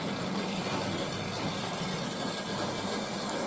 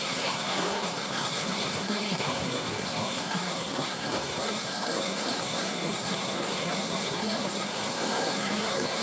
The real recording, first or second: first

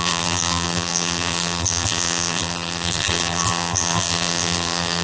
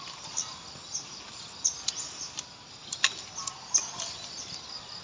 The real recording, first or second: second